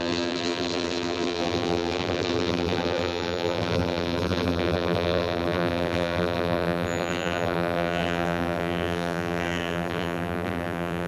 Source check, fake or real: fake